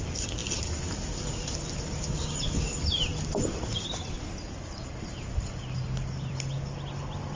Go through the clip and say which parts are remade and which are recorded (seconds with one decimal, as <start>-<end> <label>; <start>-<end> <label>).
0.0-7.4 recorded